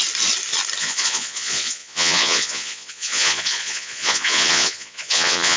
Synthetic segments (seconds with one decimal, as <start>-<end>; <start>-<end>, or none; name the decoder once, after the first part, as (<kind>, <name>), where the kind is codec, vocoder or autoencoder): 0.8-5.6 (vocoder, Vocos)